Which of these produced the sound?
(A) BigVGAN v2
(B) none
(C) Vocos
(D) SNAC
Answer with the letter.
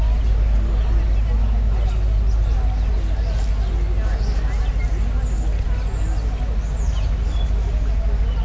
B